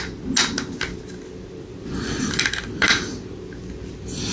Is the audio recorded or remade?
recorded